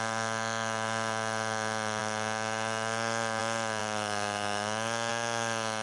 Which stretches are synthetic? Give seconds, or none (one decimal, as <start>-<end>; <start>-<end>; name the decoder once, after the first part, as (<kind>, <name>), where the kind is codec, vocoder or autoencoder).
0.0-5.8 (autoencoder, DAC-VAE)